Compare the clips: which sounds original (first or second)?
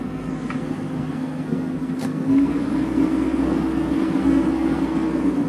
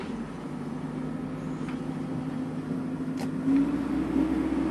second